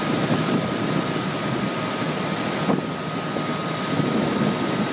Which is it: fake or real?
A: real